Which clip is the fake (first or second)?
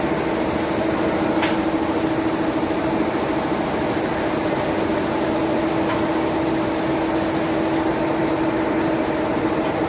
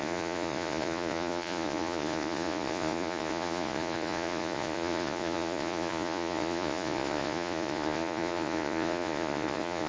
second